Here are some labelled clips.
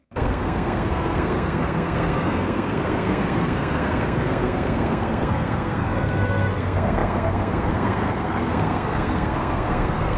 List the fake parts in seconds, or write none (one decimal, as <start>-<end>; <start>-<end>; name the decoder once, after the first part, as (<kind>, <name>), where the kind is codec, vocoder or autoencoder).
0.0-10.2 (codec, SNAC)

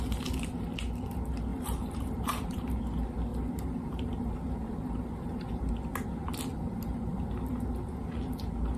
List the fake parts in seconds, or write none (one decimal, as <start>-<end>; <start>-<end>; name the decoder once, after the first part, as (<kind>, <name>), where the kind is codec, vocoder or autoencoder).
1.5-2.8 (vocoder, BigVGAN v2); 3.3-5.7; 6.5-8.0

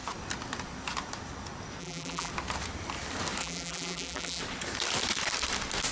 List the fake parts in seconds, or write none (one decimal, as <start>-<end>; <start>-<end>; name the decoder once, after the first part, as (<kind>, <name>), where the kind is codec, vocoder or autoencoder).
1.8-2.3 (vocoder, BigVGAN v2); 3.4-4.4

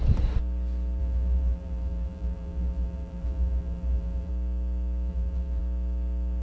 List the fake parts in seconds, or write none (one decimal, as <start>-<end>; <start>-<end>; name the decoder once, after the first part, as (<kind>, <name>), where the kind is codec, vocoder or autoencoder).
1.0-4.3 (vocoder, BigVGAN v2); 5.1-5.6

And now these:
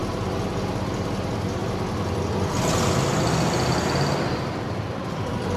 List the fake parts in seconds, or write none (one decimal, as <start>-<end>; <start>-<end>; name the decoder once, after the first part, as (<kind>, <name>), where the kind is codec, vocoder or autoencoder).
none